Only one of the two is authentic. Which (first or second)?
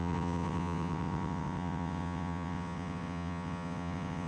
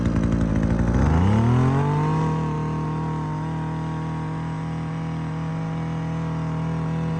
second